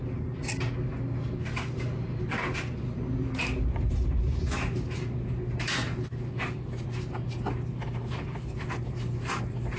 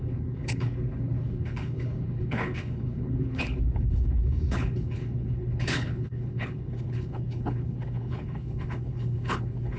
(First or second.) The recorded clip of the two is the first